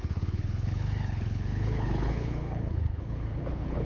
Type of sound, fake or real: fake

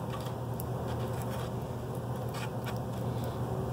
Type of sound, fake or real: real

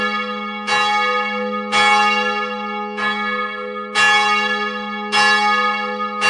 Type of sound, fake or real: real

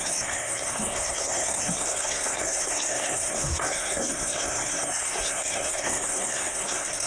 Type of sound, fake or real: fake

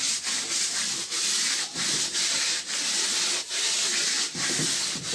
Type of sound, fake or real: real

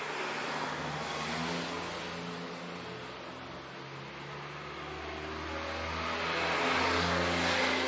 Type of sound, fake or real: real